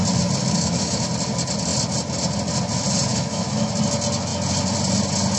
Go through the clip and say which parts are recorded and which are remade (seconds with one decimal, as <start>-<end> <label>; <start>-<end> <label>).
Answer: 0.0-0.4 recorded; 0.4-1.1 remade; 1.1-3.1 recorded; 3.1-3.7 remade; 3.7-5.4 recorded

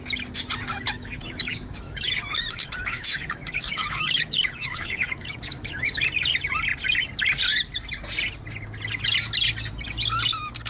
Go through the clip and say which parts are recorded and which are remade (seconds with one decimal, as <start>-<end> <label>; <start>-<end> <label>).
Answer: 0.0-0.7 recorded; 0.7-5.9 remade; 5.9-10.7 recorded

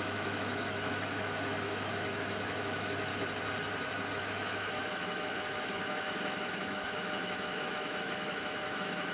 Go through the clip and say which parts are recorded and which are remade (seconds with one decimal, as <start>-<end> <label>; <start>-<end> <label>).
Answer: 0.0-3.1 remade; 3.1-4.1 recorded; 4.1-9.1 remade